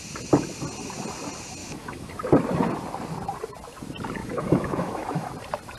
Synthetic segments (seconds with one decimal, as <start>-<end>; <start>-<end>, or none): 1.6-2.1; 4.2-5.3